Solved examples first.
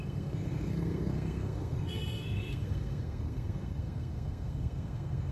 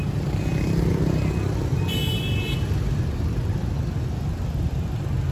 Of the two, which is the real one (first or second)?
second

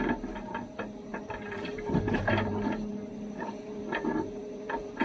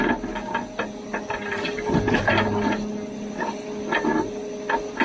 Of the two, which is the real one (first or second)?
second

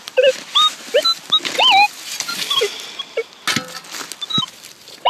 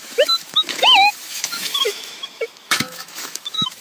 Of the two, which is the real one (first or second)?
first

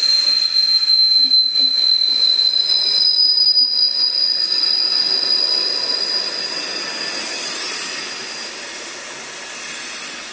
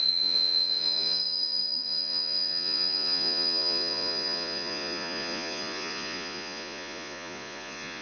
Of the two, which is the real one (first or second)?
first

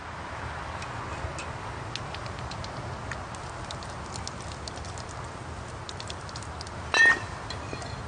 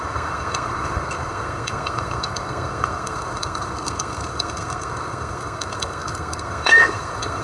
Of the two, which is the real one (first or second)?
first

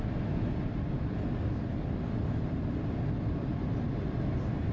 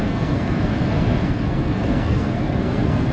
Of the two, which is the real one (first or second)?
first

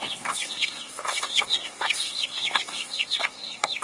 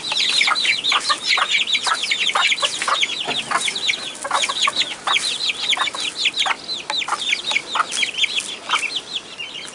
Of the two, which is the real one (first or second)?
second